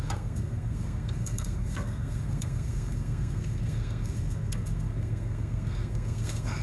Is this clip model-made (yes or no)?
yes